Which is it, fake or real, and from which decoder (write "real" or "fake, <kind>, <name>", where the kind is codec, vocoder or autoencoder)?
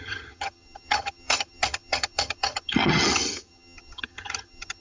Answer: fake, vocoder, HiFi-GAN